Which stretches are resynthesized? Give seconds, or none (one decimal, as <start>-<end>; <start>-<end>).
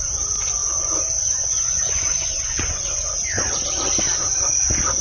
0.6-3.6